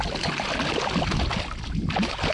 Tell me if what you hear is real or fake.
real